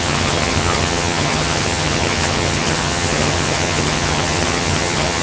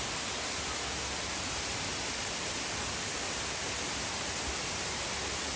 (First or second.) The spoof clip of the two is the first